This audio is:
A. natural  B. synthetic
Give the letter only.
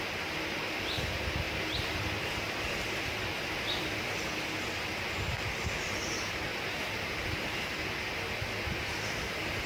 A